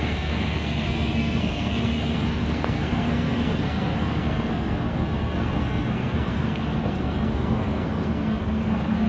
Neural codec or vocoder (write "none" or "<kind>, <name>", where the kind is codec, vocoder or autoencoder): codec, SNAC